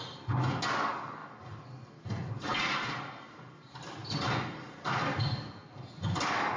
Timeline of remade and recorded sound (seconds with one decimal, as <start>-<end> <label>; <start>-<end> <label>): 0.0-6.6 recorded